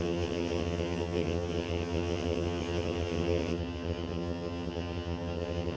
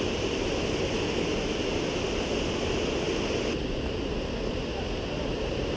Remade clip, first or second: first